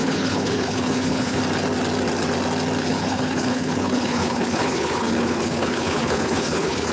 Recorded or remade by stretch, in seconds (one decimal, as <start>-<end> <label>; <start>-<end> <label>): 0.0-1.4 remade; 1.4-2.8 recorded; 2.8-6.9 remade